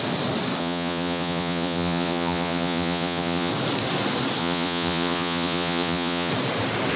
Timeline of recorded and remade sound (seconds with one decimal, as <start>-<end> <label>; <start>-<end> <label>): 0.0-0.6 recorded; 0.6-3.5 remade; 3.5-4.4 recorded; 4.4-6.3 remade; 6.3-7.0 recorded